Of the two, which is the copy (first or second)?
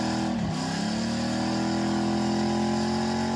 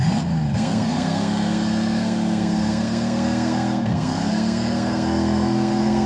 second